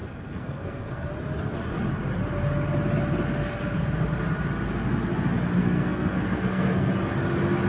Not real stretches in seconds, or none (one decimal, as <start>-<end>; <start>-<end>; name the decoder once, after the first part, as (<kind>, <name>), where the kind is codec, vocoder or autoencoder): 0.0-1.1 (codec, SNAC); 5.6-6.9